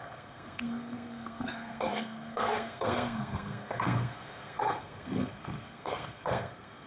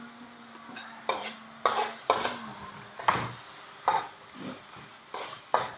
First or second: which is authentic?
second